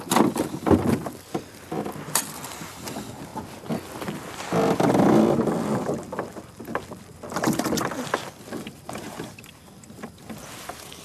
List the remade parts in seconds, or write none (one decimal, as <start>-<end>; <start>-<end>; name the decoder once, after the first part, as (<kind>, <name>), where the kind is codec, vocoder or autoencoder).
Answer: 0.0-3.3 (vocoder, BigVGAN v2); 6.9-11.0